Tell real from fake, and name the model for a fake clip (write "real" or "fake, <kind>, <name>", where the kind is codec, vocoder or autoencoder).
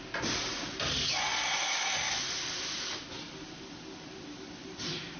real